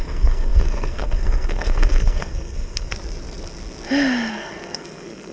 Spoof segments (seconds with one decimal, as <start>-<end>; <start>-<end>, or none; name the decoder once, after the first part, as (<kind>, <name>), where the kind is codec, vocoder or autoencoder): 0.0-2.9 (codec, SNAC); 4.3-5.3